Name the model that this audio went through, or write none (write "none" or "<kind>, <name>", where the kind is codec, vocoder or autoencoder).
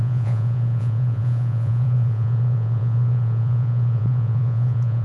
vocoder, Vocos